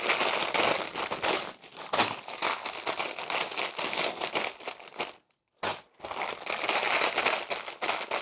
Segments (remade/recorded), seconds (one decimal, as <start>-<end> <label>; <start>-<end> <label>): 0.0-8.2 recorded